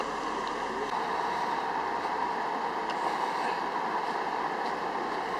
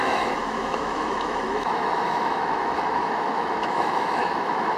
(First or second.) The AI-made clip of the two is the second